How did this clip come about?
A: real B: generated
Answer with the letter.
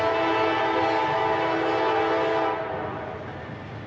A